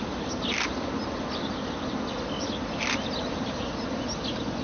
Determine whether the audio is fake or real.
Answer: real